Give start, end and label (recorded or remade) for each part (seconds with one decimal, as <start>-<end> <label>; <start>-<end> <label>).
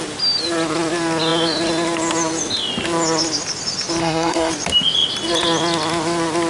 0.0-4.0 recorded; 4.0-4.5 remade; 4.5-6.5 recorded